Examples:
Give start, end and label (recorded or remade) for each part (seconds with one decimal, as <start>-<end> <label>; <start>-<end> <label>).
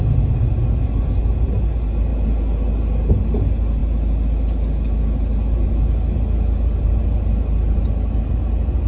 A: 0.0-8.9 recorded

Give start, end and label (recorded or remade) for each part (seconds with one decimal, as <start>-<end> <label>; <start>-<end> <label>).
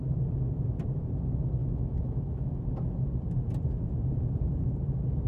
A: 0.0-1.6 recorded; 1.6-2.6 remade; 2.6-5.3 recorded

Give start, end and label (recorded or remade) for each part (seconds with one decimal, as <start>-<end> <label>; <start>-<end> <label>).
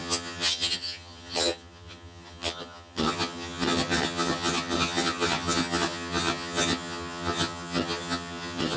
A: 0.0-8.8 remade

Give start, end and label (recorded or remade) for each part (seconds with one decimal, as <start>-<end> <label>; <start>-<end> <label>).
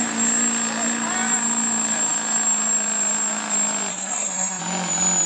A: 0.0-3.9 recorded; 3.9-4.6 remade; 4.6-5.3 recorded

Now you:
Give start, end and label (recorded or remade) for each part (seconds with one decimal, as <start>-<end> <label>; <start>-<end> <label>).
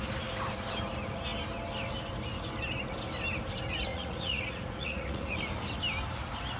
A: 0.0-3.9 recorded; 3.9-5.4 remade; 5.4-6.6 recorded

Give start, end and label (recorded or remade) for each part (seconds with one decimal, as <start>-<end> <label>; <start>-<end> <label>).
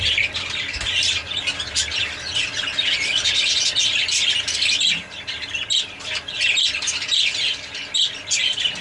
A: 0.0-8.8 recorded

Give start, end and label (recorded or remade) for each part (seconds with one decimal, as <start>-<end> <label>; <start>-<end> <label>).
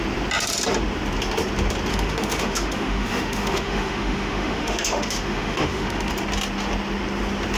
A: 0.0-1.9 recorded; 1.9-6.1 remade; 6.1-7.6 recorded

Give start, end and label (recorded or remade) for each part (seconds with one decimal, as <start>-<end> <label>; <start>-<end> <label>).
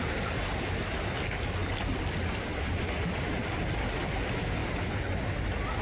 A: 0.0-4.6 recorded; 4.6-5.3 remade; 5.3-5.8 recorded